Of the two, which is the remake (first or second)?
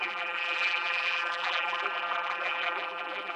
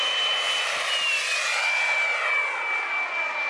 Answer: first